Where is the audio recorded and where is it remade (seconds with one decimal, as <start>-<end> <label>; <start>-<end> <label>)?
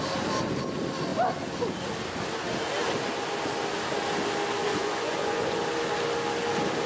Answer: 0.0-4.6 recorded; 4.6-5.6 remade; 5.6-6.9 recorded